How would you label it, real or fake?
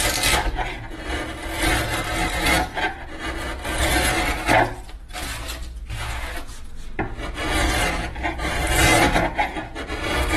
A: real